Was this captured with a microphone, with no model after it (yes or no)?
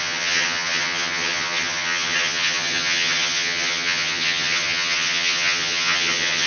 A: no